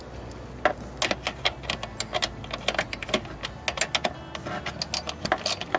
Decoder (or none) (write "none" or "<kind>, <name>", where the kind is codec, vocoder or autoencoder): none